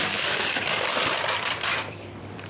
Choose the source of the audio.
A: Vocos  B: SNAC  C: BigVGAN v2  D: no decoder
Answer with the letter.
C